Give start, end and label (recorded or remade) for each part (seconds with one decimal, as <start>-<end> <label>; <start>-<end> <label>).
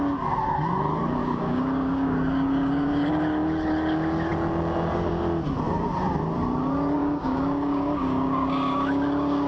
0.0-1.2 recorded; 1.2-3.1 remade; 3.1-7.0 recorded; 7.0-9.5 remade